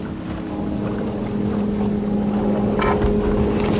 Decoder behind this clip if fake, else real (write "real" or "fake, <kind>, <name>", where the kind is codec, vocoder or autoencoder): real